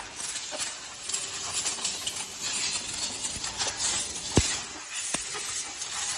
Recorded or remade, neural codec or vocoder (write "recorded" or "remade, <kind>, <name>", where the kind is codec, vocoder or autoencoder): recorded